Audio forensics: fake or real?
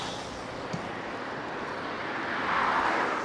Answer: real